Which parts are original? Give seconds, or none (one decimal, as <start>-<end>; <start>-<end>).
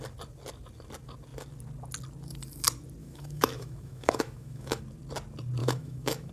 0.0-3.0; 4.8-5.6